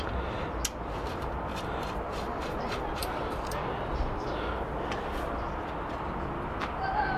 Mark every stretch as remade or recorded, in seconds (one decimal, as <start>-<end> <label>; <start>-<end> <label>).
0.0-1.5 recorded; 1.5-2.2 remade; 2.2-3.0 recorded; 3.0-3.5 remade; 3.5-7.2 recorded